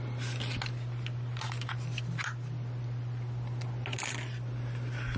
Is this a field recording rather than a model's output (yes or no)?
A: yes